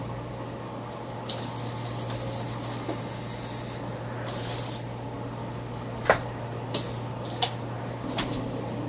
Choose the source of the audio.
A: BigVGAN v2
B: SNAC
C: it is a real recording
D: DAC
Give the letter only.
C